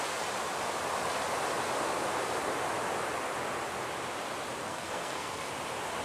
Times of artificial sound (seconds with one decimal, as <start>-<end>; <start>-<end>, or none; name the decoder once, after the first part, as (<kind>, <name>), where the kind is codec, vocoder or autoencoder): 4.6-5.5 (codec, SNAC)